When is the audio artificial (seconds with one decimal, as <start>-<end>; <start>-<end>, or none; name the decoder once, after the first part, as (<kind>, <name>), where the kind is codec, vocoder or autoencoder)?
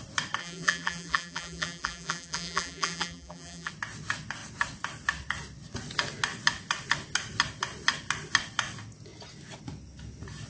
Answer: 0.4-3.7 (vocoder, BigVGAN v2)